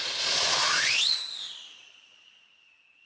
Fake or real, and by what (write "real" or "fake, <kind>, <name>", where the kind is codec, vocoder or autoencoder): fake, vocoder, Vocos